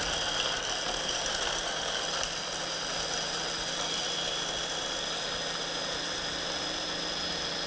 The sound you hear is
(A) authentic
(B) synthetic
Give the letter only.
A